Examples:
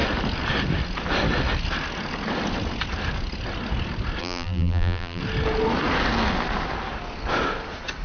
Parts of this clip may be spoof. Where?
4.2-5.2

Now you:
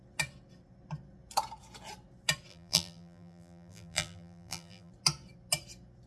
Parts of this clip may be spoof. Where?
2.5-4.9

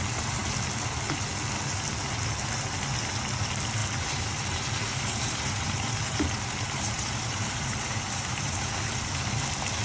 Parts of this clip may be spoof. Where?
3.8-8.8

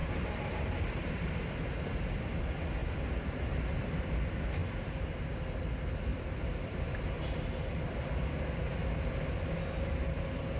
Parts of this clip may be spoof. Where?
0.0-2.4; 2.8-4.1; 4.6-5.3; 6.1-6.9

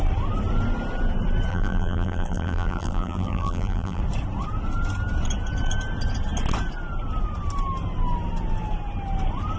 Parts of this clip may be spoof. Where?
1.5-4.0

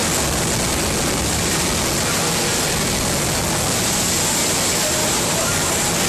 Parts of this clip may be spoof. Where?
5.0-5.5

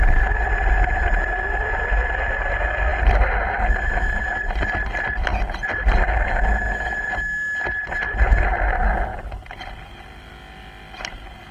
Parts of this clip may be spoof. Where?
9.1-9.7

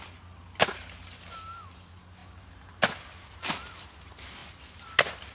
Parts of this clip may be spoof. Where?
none